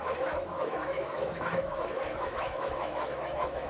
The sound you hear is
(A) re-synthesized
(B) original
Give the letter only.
A